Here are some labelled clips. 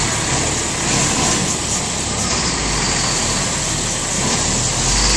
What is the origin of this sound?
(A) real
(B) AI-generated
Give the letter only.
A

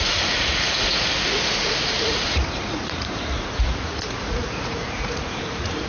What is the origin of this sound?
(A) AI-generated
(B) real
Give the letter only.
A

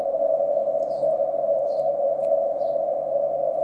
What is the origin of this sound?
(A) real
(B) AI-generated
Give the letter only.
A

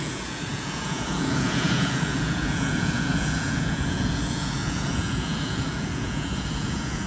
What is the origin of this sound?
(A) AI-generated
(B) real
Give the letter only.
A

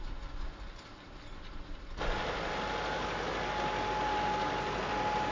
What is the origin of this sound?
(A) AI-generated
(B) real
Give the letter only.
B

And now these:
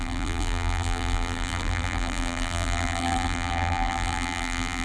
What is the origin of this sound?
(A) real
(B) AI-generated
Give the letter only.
B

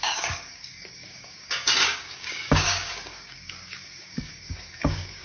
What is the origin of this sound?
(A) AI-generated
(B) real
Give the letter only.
A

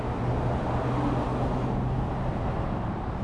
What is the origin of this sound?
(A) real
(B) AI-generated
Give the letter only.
A